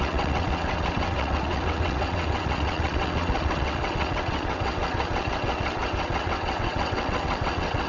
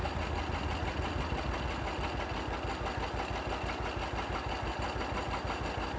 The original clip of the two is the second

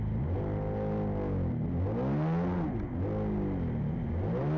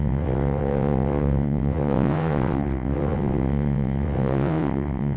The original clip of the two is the first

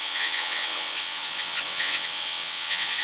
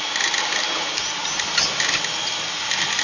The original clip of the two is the second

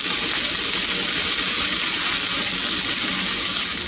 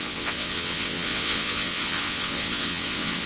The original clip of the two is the first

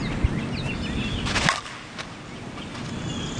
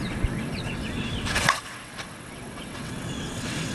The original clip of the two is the first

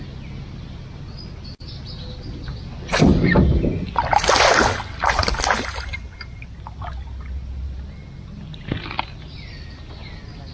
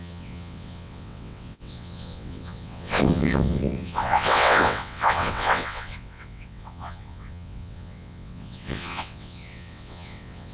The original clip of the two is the first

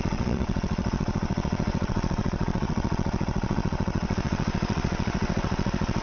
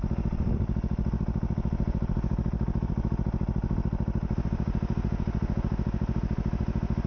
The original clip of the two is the second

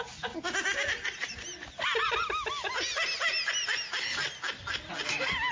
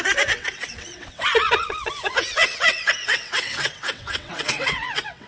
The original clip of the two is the first